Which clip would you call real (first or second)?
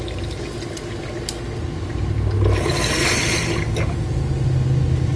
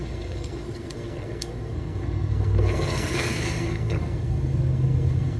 first